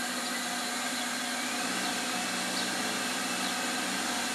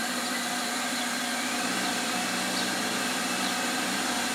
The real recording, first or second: first